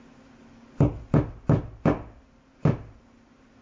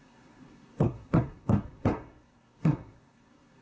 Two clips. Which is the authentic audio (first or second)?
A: first